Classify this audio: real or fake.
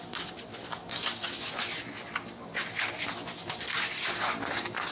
real